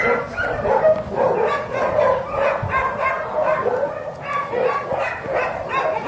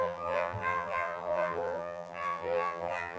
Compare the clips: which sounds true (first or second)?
first